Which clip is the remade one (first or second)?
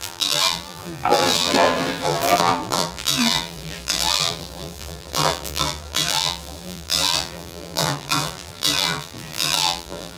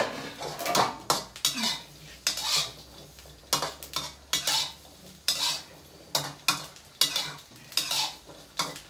first